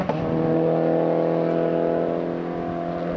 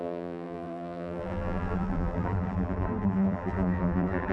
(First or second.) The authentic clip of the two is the first